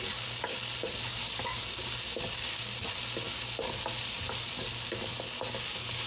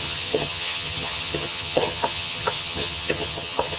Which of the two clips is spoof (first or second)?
second